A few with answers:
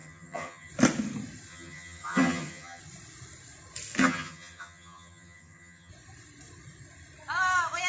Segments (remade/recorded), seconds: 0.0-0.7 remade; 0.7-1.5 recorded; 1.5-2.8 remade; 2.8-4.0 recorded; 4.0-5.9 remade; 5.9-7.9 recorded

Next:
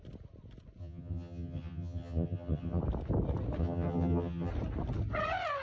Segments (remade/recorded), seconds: 0.0-0.8 recorded; 0.8-2.8 remade; 2.8-3.6 recorded; 3.6-4.5 remade; 4.5-5.6 recorded

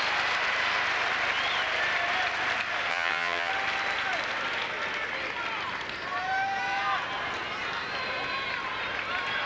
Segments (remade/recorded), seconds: 0.0-2.9 recorded; 2.9-3.5 remade; 3.5-9.5 recorded

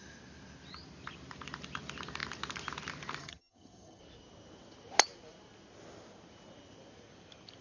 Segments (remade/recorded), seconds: 0.0-3.2 recorded; 3.2-4.0 remade; 4.0-7.6 recorded

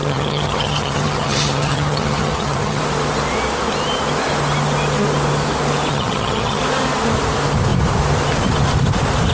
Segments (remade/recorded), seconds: 0.0-2.8 remade; 2.8-5.9 recorded; 5.9-6.6 remade; 6.6-9.3 recorded

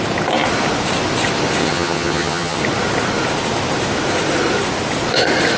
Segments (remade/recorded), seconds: 0.0-1.6 recorded; 1.6-2.6 remade; 2.6-5.6 recorded

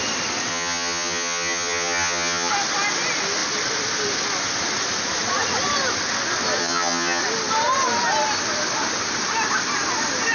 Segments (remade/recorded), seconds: 0.0-0.5 recorded; 0.5-2.5 remade; 2.5-6.6 recorded; 6.6-7.2 remade; 7.2-10.3 recorded

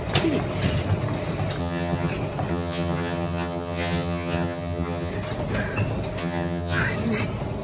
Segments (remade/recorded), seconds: 0.0-1.6 recorded; 1.6-2.1 remade; 2.1-2.5 recorded; 2.5-5.1 remade; 5.1-6.2 recorded; 6.2-6.8 remade; 6.8-7.6 recorded